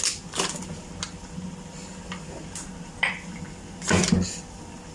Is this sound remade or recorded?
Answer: recorded